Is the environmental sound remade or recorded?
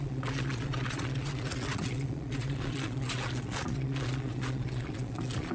remade